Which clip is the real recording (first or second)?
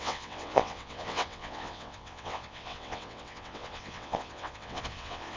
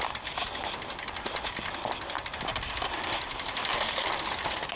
second